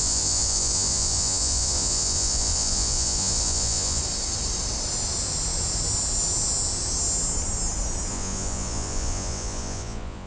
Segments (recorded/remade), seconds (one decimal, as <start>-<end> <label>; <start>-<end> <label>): 0.0-4.0 remade; 4.0-8.1 recorded; 8.1-10.3 remade